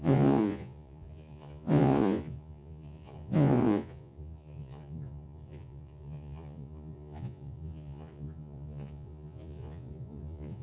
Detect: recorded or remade remade